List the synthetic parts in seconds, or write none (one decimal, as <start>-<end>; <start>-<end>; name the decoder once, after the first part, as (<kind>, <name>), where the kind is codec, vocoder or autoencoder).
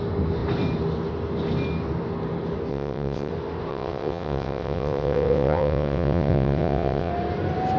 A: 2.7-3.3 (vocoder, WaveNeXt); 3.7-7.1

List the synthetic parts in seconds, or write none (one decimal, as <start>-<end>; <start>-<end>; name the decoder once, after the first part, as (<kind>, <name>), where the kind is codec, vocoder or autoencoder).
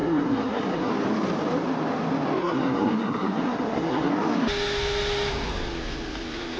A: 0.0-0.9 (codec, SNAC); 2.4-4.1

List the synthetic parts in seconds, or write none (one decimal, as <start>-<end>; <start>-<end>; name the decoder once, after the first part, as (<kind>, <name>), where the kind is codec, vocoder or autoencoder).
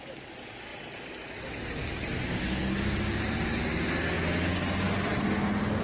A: none